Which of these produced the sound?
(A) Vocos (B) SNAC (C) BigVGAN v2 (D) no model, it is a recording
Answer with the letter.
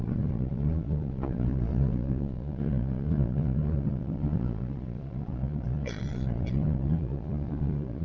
A